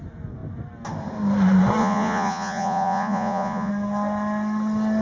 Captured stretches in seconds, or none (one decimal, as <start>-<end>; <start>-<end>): 0.0-1.8; 3.7-5.0